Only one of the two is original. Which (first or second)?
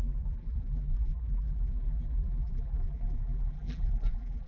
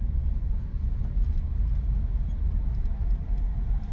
second